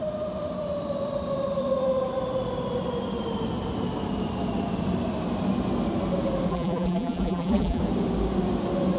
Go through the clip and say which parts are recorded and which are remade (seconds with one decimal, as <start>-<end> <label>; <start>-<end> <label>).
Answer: 0.0-6.5 recorded; 6.5-7.8 remade; 7.8-9.0 recorded